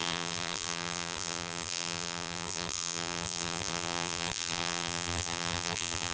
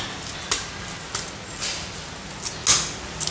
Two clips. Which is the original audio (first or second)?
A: second